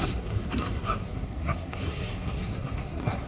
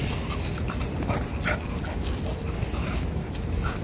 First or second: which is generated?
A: first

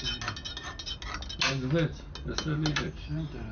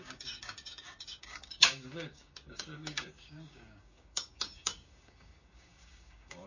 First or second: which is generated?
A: second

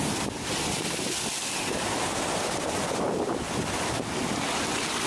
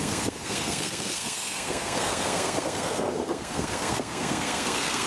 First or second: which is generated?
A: second